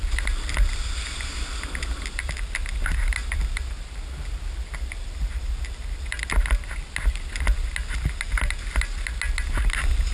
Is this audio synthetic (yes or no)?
no